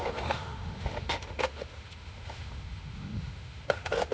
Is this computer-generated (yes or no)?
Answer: yes